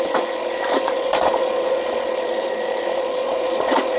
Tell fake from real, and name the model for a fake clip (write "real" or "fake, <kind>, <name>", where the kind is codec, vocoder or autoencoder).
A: fake, vocoder, Vocos